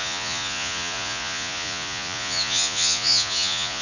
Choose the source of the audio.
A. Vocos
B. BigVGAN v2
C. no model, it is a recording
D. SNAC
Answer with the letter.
A